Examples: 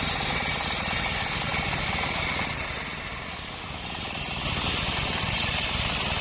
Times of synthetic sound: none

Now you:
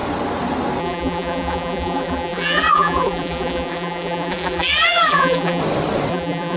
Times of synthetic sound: 0.8-5.6 (vocoder, BigVGAN v2); 6.1-6.6

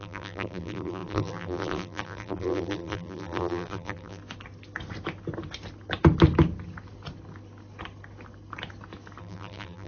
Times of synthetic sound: 0.0-4.2 (vocoder, BigVGAN v2); 9.2-9.9

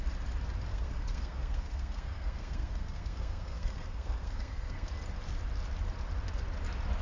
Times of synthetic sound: 0.7-4.9 (codec, SNAC)